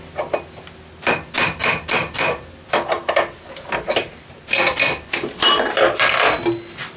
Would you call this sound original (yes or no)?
yes